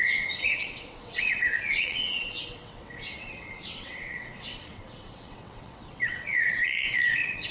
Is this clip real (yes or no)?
no